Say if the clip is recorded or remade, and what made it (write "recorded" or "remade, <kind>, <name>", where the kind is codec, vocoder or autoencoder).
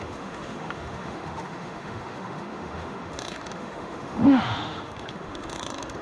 remade, autoencoder, DAC-VAE